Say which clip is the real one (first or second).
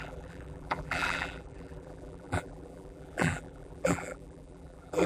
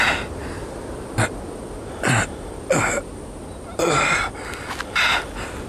second